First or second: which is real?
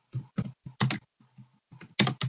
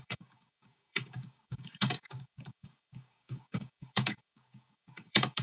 first